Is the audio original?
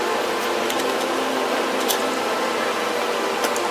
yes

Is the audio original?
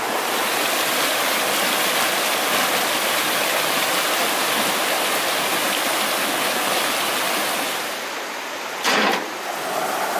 yes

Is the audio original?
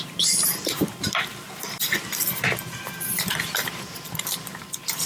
no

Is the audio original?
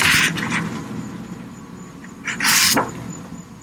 yes